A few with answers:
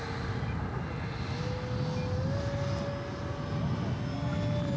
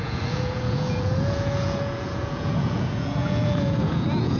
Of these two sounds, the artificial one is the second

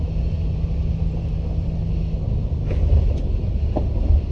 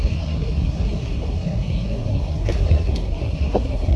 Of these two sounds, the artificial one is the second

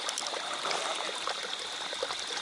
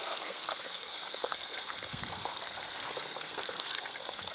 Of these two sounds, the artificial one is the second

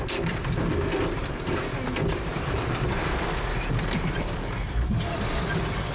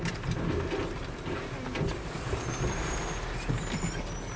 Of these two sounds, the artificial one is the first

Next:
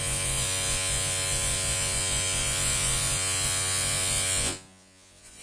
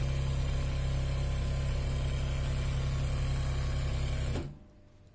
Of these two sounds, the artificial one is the first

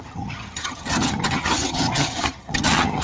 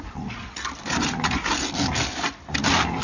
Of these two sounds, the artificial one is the first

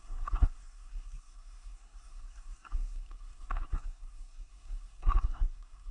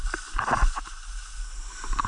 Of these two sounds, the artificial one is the first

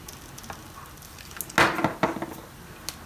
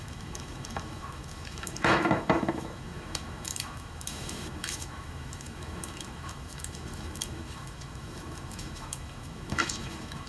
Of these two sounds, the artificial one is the second